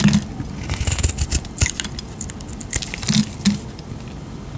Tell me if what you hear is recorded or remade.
recorded